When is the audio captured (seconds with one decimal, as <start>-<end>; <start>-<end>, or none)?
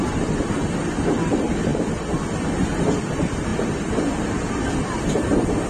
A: 0.0-5.7